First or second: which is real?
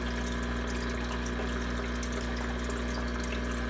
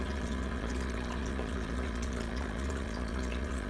first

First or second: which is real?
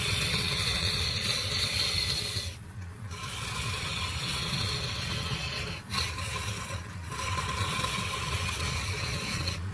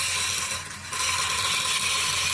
second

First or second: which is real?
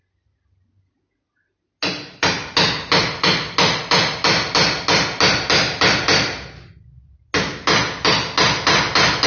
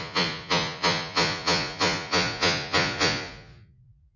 first